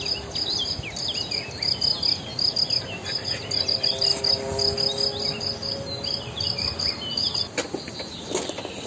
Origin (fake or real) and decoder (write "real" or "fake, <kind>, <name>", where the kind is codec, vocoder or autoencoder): real